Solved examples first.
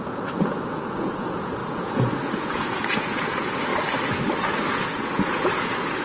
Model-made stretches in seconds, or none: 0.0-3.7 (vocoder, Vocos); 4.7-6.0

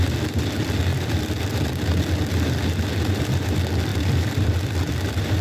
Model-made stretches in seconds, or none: 3.9-5.4 (vocoder, BigVGAN v2)

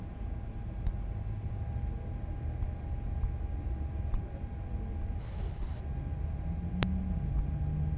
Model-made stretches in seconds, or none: 5.2-5.8 (codec, HILCodec)